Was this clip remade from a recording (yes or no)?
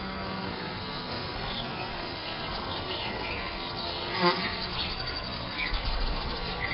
yes